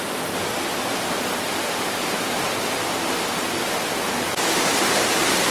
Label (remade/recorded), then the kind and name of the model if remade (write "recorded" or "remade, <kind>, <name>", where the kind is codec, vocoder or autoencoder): recorded